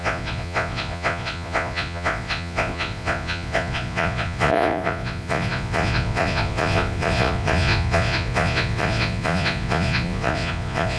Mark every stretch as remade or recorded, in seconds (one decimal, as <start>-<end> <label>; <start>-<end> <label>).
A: 0.0-11.0 remade

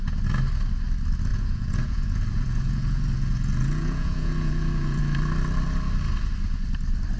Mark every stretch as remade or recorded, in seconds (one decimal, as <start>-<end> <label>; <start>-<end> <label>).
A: 0.0-1.3 recorded; 1.3-5.0 remade; 5.0-7.2 recorded

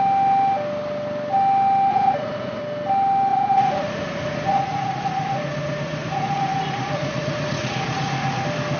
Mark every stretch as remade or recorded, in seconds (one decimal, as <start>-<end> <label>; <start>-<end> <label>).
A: 0.0-1.9 recorded; 1.9-2.6 remade; 2.6-3.3 recorded; 3.3-8.4 remade; 8.4-8.8 recorded

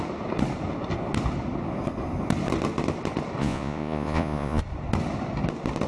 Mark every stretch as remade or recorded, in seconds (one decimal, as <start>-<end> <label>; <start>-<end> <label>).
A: 0.0-3.4 recorded; 3.4-4.6 remade; 4.6-5.9 recorded